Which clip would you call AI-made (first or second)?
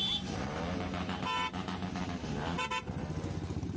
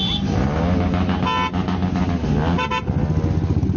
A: first